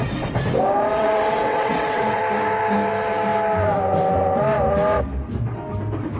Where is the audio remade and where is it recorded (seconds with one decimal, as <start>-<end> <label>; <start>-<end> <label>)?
0.0-0.9 recorded; 0.9-2.2 remade; 2.2-6.2 recorded